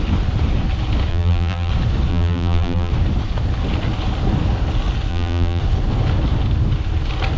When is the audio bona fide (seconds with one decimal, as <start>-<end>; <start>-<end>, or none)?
0.0-1.1; 1.7-2.1; 2.9-5.1; 5.6-7.4